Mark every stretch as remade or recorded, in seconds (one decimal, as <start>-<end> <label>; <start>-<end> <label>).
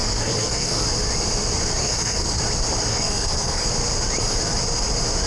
0.0-0.8 remade; 0.8-1.8 recorded; 1.8-2.4 remade; 2.4-2.9 recorded; 2.9-3.7 remade; 3.7-5.3 recorded